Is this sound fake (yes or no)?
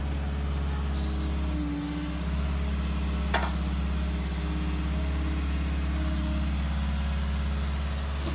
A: no